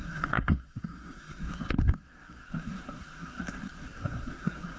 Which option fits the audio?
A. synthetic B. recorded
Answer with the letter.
A